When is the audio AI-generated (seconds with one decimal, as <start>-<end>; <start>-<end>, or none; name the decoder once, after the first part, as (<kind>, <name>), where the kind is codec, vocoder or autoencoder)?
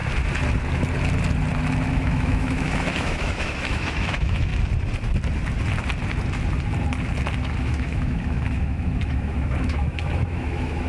1.9-4.5 (autoencoder, DAC-VAE); 7.6-10.9